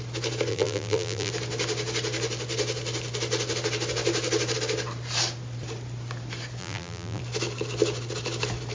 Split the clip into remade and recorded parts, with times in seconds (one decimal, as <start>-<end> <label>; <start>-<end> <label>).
0.0-0.5 recorded; 0.5-1.3 remade; 1.3-6.6 recorded; 6.6-7.2 remade; 7.2-8.7 recorded